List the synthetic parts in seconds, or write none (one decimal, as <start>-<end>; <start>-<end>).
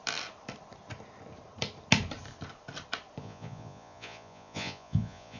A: 3.2-5.4